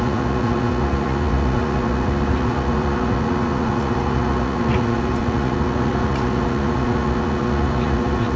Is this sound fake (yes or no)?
yes